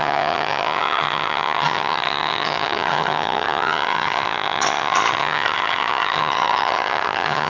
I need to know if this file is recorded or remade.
remade